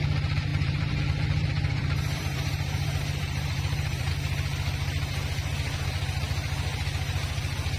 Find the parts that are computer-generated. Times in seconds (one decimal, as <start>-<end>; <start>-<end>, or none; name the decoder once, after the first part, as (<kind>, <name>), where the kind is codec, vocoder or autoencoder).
0.5-4.1 (vocoder, BigVGAN v2)